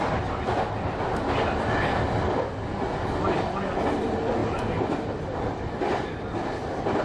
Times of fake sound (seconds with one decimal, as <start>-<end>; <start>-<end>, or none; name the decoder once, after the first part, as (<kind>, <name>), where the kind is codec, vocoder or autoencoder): none